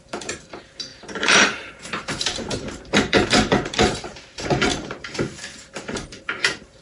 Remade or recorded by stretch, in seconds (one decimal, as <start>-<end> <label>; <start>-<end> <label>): 0.0-6.8 remade